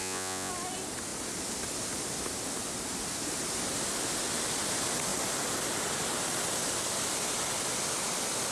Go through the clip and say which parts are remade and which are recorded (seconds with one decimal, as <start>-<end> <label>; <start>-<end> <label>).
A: 0.0-0.5 remade; 0.5-8.5 recorded